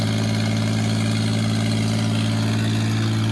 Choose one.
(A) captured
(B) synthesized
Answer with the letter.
A